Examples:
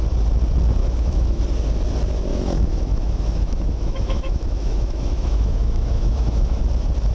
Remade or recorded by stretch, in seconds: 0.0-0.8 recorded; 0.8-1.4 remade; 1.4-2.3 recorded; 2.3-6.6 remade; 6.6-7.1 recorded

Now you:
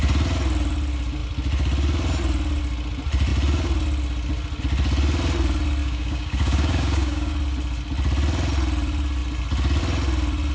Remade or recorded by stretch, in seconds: 0.0-5.8 recorded; 5.8-7.3 remade; 7.3-10.5 recorded

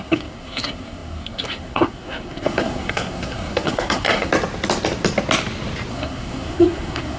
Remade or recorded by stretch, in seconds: 0.0-4.3 remade; 4.3-5.9 recorded; 5.9-7.2 remade

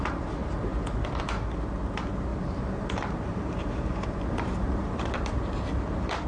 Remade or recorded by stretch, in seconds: 0.0-2.3 recorded; 2.3-5.3 remade; 5.3-6.3 recorded

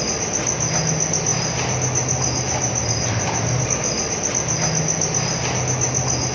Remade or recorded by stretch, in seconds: 0.0-6.3 recorded

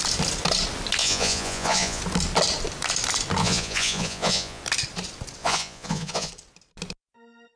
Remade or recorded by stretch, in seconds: 0.0-1.0 recorded; 1.0-2.0 remade; 2.0-3.4 recorded; 3.4-4.6 remade; 4.6-5.4 recorded; 5.4-6.3 remade; 6.3-7.6 recorded